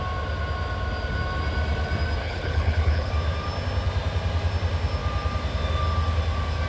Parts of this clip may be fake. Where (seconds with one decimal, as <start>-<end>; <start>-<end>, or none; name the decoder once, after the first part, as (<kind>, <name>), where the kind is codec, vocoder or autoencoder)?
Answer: 2.2-3.1 (codec, HILCodec)